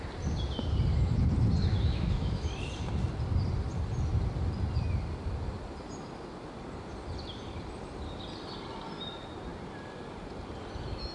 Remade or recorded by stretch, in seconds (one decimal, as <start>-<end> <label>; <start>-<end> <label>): 0.0-1.7 recorded; 1.7-2.5 remade; 2.5-11.1 recorded